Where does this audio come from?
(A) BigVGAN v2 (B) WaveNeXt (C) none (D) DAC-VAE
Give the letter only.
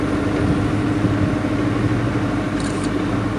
C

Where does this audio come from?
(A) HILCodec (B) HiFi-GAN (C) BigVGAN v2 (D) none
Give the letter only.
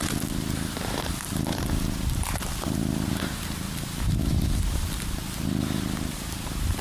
C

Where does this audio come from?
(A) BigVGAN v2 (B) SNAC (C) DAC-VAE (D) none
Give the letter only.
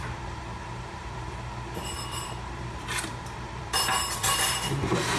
A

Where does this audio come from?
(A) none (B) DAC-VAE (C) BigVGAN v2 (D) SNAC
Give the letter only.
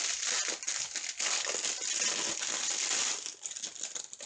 A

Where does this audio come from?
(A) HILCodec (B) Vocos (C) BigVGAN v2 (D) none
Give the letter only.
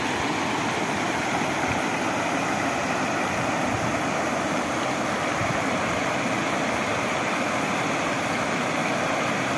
D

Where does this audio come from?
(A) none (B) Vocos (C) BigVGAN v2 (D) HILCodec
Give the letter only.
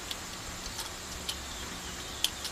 A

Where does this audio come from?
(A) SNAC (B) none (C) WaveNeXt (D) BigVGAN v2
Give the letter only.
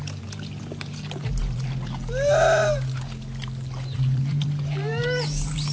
D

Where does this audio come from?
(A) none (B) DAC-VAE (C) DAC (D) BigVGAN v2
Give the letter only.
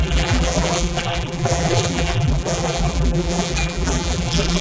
D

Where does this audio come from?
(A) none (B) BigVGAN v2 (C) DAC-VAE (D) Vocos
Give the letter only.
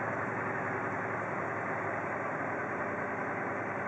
B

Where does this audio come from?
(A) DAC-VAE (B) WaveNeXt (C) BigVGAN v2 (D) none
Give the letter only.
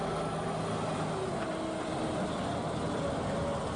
D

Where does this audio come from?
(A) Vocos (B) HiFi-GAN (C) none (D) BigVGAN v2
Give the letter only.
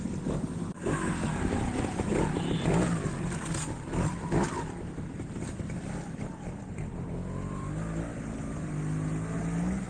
C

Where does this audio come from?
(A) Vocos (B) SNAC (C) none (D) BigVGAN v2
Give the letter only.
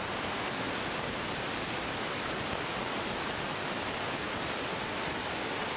D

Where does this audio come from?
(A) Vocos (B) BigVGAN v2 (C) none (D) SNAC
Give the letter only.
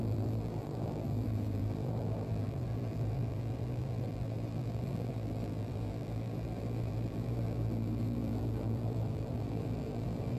B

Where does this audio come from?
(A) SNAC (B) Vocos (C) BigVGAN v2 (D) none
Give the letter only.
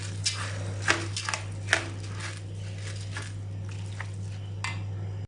D